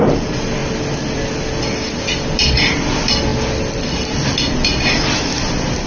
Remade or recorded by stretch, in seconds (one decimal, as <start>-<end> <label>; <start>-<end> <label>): 0.0-5.9 recorded